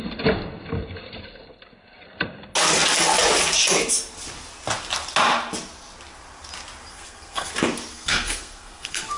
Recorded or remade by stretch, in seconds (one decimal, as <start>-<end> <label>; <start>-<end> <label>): 0.0-6.9 recorded; 6.9-7.5 remade; 7.5-7.9 recorded; 7.9-9.2 remade